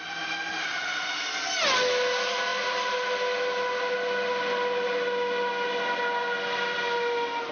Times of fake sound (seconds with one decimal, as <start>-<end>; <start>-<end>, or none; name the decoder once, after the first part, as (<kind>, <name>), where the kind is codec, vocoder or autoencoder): none